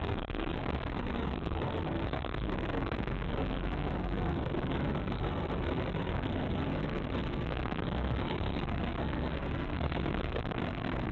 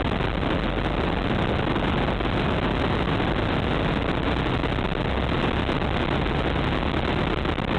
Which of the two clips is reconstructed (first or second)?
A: first